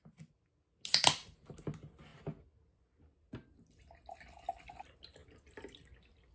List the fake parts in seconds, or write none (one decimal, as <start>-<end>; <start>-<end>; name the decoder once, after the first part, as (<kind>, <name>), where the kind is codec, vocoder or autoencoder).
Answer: none